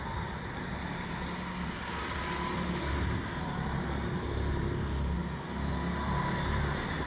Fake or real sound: real